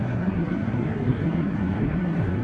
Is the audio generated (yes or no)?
yes